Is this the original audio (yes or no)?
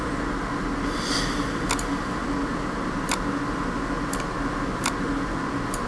yes